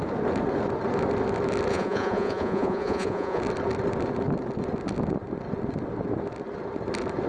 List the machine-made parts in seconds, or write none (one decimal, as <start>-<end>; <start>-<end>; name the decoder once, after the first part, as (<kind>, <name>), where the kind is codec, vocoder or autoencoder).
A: 1.7-3.4 (vocoder, Vocos)